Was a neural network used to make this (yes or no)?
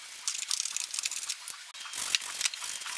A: no